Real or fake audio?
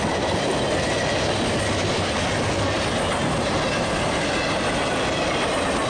real